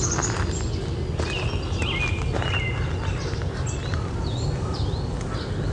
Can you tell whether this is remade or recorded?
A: recorded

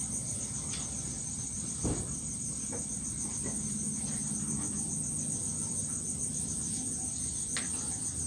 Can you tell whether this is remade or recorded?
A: recorded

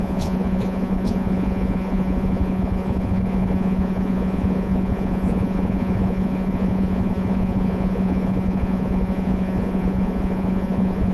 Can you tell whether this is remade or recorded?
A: remade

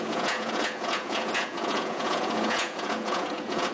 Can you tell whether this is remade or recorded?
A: remade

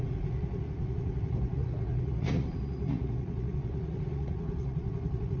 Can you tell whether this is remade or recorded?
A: remade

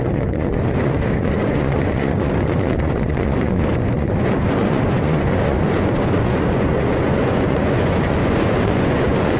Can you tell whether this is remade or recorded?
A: remade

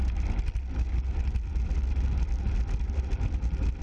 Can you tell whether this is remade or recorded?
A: recorded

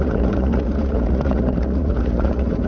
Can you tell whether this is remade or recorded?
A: remade